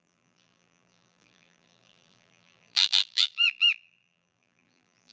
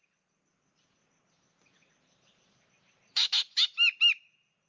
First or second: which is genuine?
second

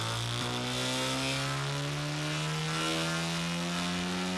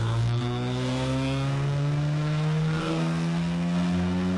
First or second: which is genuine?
first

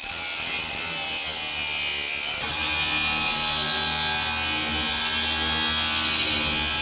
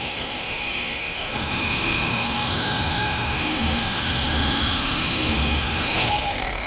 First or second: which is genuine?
first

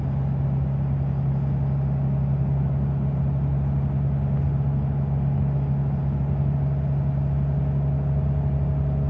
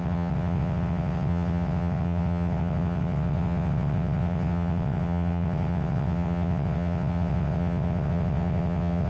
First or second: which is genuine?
first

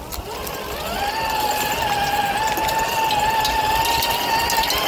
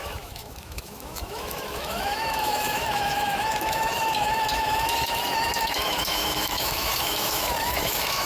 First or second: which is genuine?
first